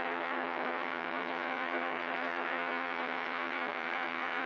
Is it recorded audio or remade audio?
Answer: remade